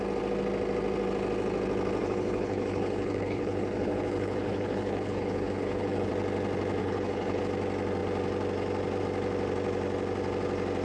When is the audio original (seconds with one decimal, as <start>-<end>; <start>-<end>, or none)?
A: 0.0-2.0; 6.1-6.8; 7.4-10.8